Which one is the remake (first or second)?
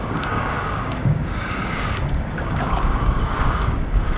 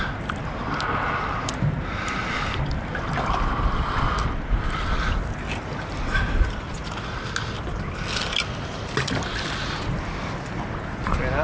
first